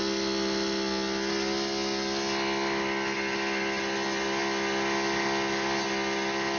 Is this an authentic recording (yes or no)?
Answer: yes